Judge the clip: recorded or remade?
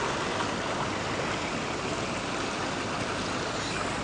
recorded